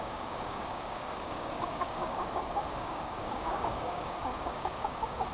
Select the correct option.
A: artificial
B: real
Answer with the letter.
A